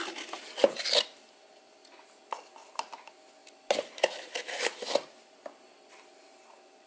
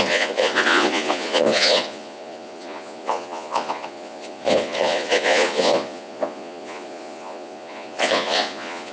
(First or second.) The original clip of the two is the first